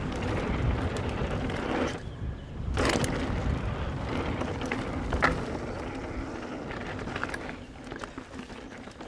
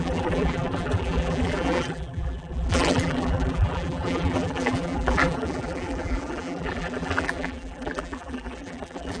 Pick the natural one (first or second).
first